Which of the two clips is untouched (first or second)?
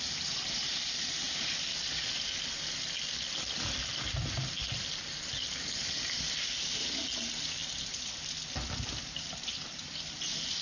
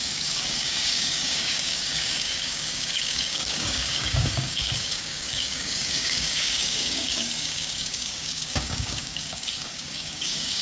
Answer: first